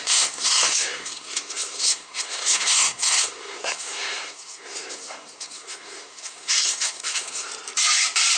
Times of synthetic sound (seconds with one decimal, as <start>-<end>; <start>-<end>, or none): 0.0-7.5